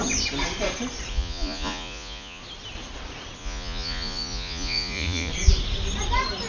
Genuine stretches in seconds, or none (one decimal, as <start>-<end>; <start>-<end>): 0.0-1.1; 2.4-3.4; 5.3-6.5